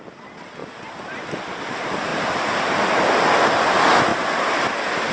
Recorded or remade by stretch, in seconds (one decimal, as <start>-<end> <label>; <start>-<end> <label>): 0.0-5.1 recorded